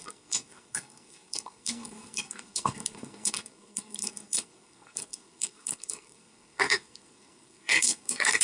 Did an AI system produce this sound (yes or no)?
yes